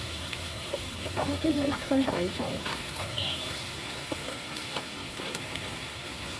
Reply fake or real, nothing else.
fake